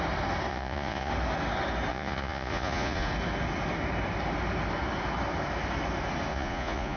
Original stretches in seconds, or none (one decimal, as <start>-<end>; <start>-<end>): 0.0-0.5; 1.1-1.9; 3.1-6.3